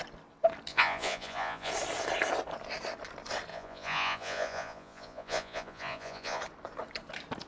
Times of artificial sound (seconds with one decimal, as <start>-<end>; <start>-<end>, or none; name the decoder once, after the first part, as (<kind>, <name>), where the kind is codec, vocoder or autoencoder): 0.7-1.7 (vocoder, Vocos); 3.5-6.4